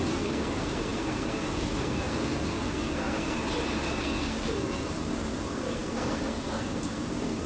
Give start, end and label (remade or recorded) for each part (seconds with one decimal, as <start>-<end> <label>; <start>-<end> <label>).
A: 0.0-3.4 remade; 3.4-3.9 recorded; 3.9-7.5 remade